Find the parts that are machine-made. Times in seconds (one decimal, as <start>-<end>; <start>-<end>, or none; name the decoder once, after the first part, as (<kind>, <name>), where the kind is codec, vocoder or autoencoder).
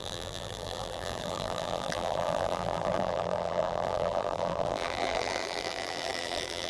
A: 0.0-6.7 (vocoder, BigVGAN v2)